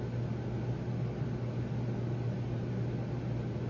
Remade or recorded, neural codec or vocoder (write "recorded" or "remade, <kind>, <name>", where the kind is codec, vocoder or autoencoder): recorded